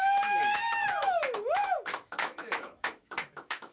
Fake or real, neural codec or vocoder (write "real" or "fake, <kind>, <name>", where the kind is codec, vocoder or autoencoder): fake, autoencoder, DAC-VAE